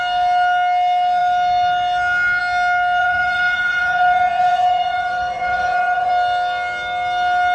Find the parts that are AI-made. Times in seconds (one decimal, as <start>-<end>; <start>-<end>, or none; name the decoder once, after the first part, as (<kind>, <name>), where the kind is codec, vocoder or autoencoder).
3.0-6.1 (vocoder, Vocos)